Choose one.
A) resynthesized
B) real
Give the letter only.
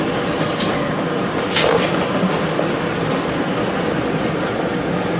B